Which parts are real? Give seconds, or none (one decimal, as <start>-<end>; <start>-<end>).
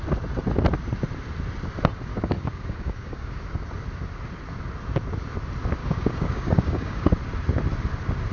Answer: 0.0-2.1; 3.4-5.8; 7.1-8.3